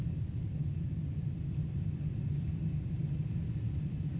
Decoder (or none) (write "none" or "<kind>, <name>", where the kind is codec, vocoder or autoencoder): none